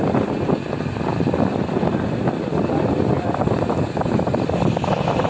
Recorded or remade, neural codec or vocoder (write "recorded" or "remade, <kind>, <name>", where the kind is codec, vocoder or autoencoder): recorded